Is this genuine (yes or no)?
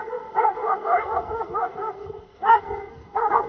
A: no